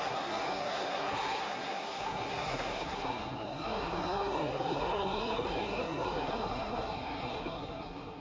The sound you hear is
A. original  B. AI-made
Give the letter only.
B